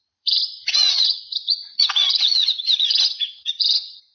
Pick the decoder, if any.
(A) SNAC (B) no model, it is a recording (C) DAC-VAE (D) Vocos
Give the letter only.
D